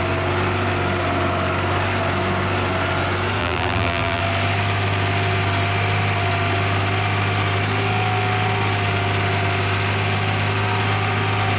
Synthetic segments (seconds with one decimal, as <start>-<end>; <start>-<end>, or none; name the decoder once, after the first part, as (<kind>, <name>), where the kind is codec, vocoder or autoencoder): 3.4-4.2 (vocoder, BigVGAN v2)

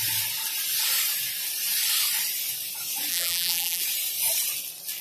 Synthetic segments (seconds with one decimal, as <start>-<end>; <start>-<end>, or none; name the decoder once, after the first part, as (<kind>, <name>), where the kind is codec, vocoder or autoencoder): 3.1-3.8 (vocoder, BigVGAN v2)

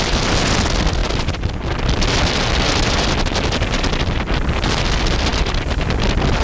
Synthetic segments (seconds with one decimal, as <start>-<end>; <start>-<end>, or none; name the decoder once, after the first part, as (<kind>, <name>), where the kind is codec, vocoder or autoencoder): none

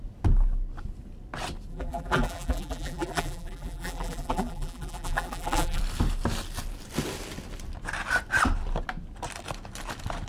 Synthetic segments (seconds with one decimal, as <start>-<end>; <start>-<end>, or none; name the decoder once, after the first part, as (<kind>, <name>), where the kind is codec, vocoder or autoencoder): 1.7-5.8 (vocoder, BigVGAN v2)

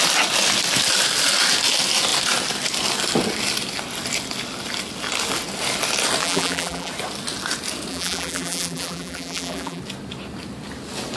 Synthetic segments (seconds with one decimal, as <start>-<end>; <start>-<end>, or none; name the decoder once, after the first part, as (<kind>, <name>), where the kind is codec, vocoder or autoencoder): 6.2-6.9 (vocoder, BigVGAN v2); 7.9-9.8

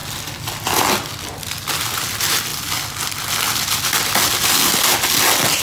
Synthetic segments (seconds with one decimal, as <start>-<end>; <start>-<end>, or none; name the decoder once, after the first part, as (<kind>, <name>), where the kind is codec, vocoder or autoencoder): none